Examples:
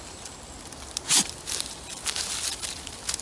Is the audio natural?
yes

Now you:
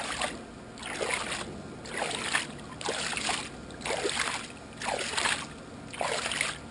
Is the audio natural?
yes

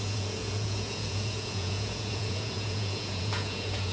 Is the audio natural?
no